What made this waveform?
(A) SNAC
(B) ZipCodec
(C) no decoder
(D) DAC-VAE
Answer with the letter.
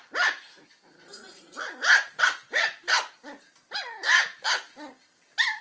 C